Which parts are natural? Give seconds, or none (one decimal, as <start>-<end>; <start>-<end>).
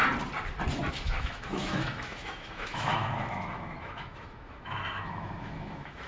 0.0-0.9